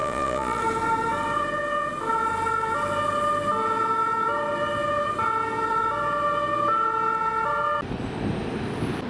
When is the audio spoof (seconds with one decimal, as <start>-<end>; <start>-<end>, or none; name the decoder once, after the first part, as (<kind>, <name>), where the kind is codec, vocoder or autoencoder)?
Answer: 0.0-0.6 (vocoder, Vocos)